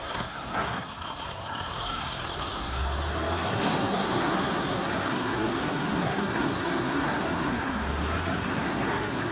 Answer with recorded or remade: remade